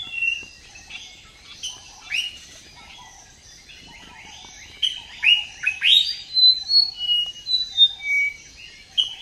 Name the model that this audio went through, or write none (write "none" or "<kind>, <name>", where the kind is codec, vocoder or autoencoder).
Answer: none